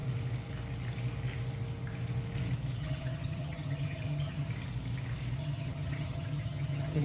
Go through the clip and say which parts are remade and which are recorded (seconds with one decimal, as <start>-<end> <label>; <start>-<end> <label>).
0.0-2.8 recorded; 2.8-4.5 remade; 4.5-5.4 recorded; 5.4-7.0 remade